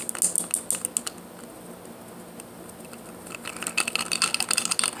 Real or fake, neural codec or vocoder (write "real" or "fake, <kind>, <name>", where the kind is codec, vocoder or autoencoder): real